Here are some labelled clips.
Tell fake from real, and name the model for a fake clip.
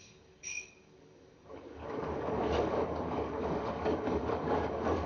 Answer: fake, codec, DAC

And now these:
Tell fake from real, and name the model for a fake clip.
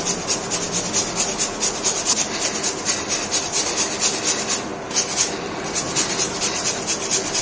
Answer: real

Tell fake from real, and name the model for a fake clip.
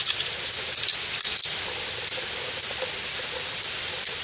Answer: real